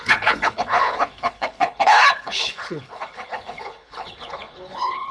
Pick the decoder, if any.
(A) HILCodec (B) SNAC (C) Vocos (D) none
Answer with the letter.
A